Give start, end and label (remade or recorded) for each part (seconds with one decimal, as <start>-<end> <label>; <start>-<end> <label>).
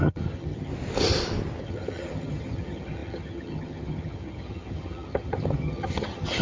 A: 0.0-0.7 remade; 0.7-1.6 recorded; 1.6-6.4 remade